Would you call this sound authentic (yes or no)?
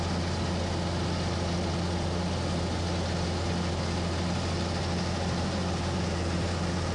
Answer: yes